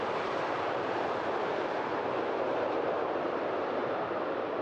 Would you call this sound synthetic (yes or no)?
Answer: yes